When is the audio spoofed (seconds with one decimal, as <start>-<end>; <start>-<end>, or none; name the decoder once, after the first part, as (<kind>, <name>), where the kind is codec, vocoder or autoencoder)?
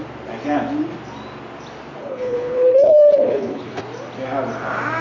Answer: 2.0-3.8 (codec, HILCodec)